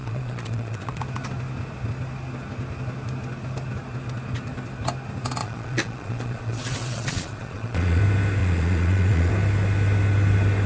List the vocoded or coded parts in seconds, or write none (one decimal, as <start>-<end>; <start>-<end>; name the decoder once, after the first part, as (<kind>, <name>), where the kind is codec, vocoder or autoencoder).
0.0-1.0 (vocoder, Vocos); 5.4-8.0; 8.4-9.3